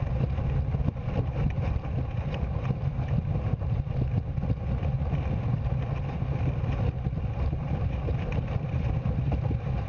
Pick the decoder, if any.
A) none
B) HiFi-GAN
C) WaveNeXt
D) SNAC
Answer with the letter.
A